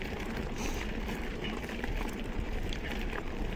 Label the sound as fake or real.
fake